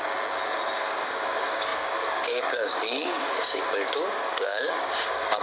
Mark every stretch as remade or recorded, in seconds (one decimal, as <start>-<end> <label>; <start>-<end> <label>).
0.0-0.8 recorded; 0.8-5.4 remade